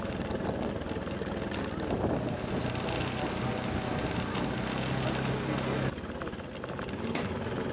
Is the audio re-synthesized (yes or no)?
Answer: no